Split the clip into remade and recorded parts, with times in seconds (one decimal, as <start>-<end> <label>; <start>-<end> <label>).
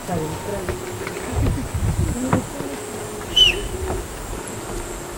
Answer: 0.0-5.2 recorded